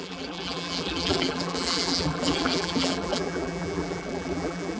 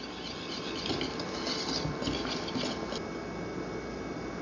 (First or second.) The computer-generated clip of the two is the first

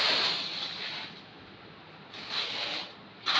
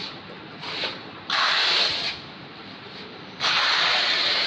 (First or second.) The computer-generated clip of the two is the second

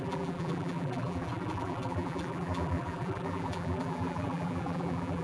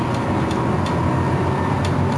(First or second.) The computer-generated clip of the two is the first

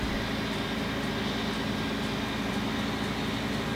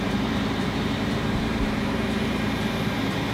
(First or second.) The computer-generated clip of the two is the second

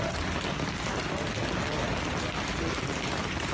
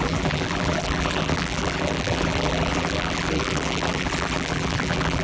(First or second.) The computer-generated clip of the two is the second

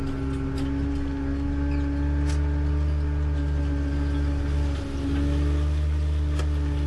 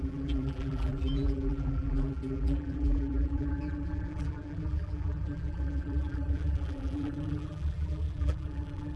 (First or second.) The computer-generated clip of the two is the second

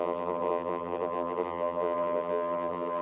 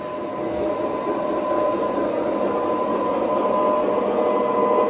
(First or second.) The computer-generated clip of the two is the first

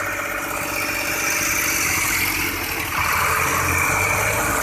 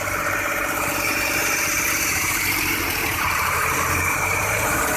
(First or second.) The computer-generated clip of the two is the second